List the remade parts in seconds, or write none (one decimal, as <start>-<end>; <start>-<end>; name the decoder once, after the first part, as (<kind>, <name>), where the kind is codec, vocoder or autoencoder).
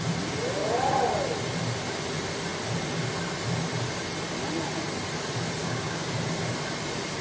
5.6-6.1 (codec, DAC)